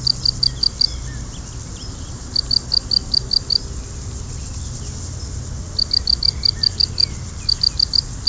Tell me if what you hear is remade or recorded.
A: recorded